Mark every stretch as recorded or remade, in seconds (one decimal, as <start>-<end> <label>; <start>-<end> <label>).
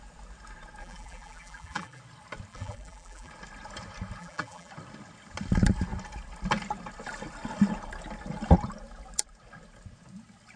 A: 0.0-0.8 recorded; 0.8-2.0 remade; 2.0-2.5 recorded; 2.5-3.3 remade; 3.3-4.2 recorded; 4.2-4.7 remade; 4.7-10.6 recorded